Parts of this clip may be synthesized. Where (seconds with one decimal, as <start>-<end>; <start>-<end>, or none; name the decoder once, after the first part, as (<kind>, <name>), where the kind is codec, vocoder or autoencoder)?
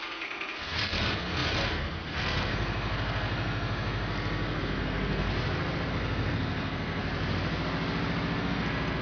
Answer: 0.0-5.3 (codec, SNAC); 5.9-7.0; 8.4-9.0